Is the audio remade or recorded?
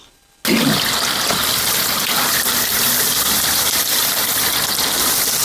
recorded